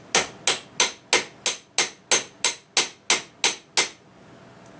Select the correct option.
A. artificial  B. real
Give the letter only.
B